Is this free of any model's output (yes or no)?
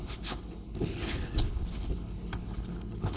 no